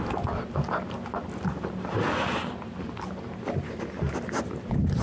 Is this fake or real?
real